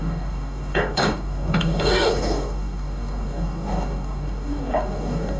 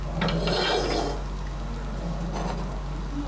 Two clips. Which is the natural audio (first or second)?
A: second